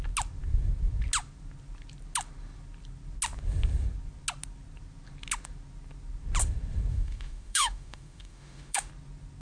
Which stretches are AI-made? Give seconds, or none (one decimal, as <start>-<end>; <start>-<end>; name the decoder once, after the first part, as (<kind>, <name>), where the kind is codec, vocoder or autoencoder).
6.9-8.9 (autoencoder, DAC-VAE)